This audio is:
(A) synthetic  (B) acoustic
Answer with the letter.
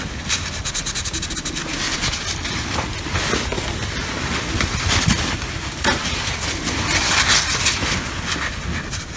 B